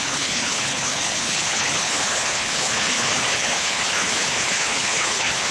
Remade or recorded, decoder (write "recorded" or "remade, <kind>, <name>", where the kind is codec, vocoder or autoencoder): remade, codec, HILCodec